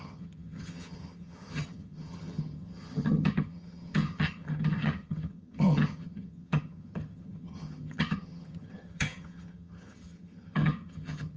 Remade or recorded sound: remade